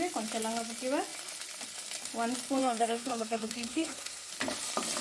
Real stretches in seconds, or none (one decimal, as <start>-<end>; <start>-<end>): 0.0-2.6; 4.3-5.0